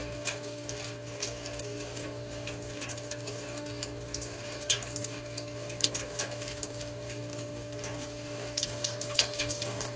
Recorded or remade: remade